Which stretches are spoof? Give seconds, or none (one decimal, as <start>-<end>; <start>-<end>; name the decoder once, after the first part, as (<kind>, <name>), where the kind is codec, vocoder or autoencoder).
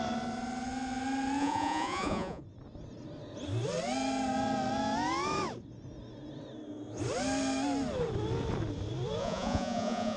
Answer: 1.4-2.4 (vocoder, Vocos); 9.2-10.2